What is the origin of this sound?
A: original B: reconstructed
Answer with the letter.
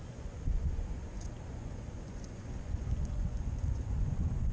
B